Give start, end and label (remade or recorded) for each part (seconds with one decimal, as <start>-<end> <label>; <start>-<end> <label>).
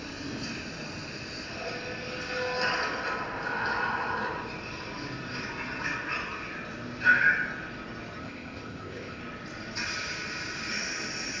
0.0-8.2 recorded; 8.2-9.2 remade; 9.2-11.4 recorded